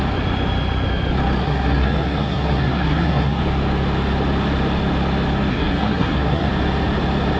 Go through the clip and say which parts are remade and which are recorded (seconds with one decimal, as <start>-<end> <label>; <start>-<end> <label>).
0.0-1.4 recorded; 1.4-3.4 remade; 3.4-5.5 recorded; 5.5-6.5 remade; 6.5-7.4 recorded